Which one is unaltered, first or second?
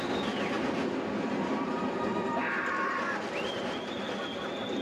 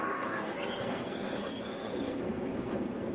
first